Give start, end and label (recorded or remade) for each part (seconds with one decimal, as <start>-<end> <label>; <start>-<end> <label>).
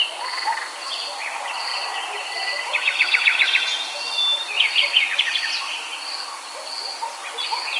0.0-7.8 recorded